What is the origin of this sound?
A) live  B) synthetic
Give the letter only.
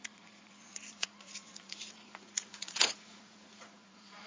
B